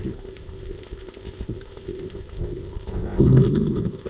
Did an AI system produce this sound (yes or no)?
yes